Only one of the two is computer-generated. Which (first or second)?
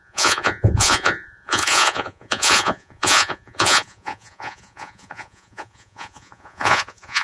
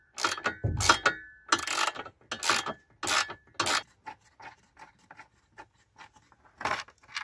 first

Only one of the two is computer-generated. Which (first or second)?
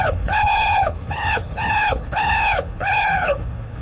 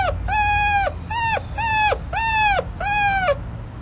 first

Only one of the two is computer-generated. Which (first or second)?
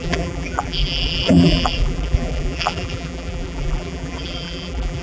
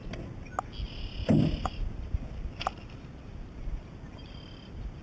first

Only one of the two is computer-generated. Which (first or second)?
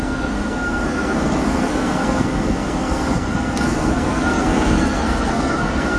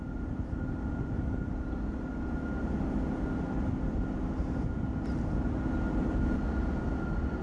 first